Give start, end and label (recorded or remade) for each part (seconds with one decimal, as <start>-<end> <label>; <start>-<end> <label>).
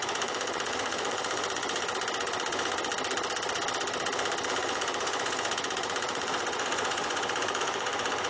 0.0-2.9 remade; 2.9-4.5 recorded; 4.5-8.3 remade